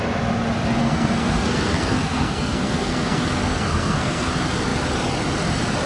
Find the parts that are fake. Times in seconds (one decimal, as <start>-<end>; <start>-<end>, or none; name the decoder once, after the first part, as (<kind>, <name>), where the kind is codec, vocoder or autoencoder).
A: 0.8-4.3 (codec, SNAC)